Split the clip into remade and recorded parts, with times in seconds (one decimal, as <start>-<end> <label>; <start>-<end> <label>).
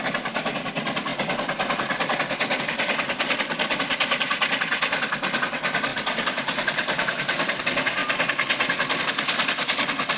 0.0-5.9 recorded; 5.9-7.6 remade; 7.6-10.2 recorded